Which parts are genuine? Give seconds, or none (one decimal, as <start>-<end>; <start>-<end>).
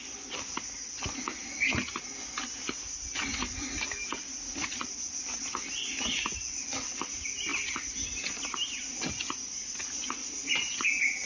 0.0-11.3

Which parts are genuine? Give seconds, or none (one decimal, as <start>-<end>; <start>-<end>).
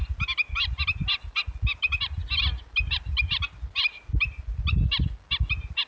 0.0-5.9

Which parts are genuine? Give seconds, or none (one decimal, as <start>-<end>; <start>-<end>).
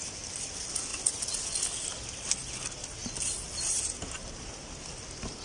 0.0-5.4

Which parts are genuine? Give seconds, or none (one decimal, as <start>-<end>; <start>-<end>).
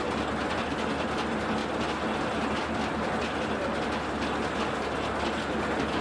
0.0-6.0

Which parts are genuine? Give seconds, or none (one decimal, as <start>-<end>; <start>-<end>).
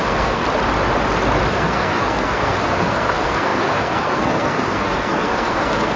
0.4-1.5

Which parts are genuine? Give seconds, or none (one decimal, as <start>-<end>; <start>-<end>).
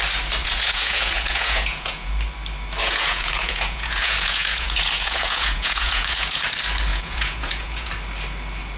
0.0-0.4; 2.1-2.8; 6.4-6.9; 7.9-8.8